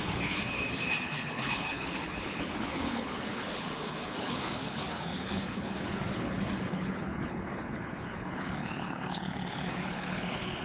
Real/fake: fake